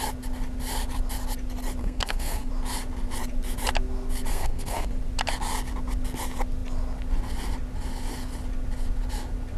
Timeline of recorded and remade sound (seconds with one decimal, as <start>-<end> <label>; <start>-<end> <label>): 0.0-1.8 recorded; 1.8-2.5 remade; 2.5-4.3 recorded; 4.3-4.9 remade; 4.9-9.6 recorded